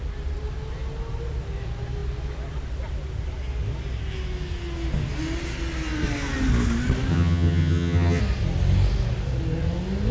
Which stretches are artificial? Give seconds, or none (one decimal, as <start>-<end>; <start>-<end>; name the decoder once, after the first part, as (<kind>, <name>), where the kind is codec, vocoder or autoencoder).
7.1-8.2 (vocoder, HiFi-GAN)